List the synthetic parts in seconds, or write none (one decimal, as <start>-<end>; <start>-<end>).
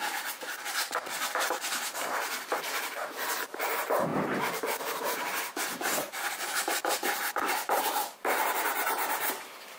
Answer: 0.0-9.8